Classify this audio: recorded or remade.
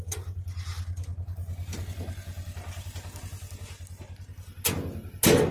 recorded